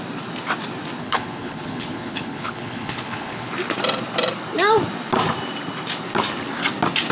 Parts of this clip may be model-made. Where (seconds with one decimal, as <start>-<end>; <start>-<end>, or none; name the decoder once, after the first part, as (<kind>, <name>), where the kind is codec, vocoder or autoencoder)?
1.0-3.5 (codec, HILCodec)